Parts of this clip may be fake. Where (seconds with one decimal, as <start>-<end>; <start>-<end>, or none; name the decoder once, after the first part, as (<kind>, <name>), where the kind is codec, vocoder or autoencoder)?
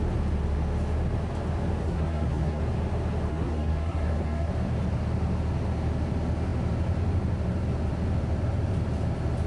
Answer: 1.8-2.6 (codec, SNAC); 3.3-4.5